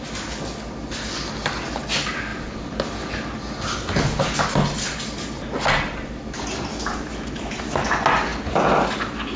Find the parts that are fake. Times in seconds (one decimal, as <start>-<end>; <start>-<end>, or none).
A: none